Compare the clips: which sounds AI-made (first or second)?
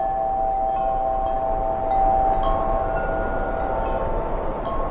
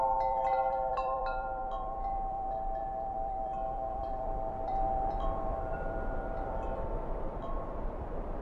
second